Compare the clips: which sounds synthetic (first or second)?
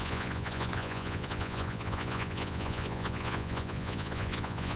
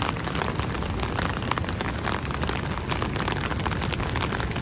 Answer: first